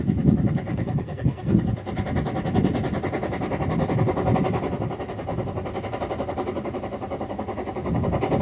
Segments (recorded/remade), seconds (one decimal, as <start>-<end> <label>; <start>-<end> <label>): 0.0-0.7 recorded; 0.7-1.6 remade; 1.6-8.4 recorded